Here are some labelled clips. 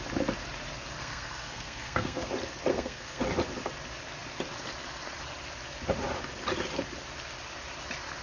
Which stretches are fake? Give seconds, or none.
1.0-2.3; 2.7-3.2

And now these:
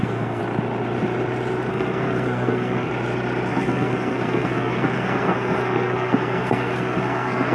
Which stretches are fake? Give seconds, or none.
0.0-0.4; 1.7-2.9; 3.5-7.5

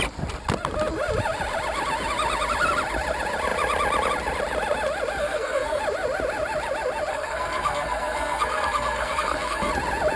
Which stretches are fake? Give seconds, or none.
5.2-5.8; 7.1-9.7

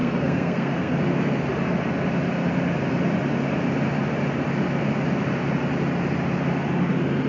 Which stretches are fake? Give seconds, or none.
0.0-1.0

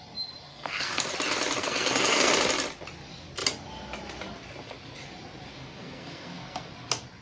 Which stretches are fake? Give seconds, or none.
0.5-1.1; 1.6-2.3; 5.5-6.7

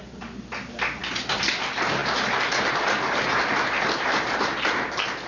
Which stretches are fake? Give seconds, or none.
none